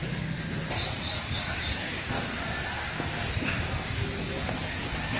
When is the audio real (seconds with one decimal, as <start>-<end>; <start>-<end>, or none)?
0.0-2.0; 2.4-5.2